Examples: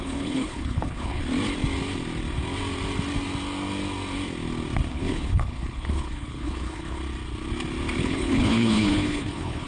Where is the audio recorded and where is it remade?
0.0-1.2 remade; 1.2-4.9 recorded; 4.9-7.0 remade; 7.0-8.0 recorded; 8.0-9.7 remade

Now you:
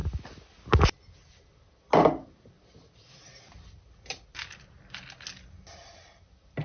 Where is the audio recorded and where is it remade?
0.0-6.6 recorded

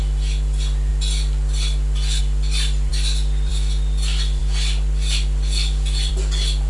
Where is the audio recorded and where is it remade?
0.0-6.7 recorded

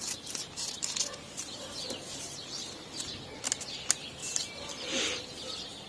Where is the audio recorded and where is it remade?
0.0-5.9 recorded

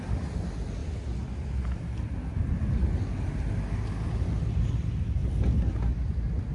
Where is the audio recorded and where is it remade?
0.0-6.5 recorded

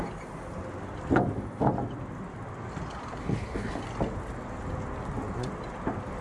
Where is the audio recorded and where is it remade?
0.0-3.2 recorded; 3.2-3.8 remade; 3.8-6.2 recorded